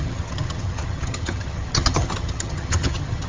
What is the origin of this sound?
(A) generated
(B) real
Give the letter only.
A